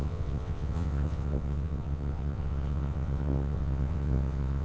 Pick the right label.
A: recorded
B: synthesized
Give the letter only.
B